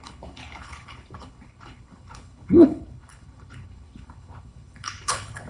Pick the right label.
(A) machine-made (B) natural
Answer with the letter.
A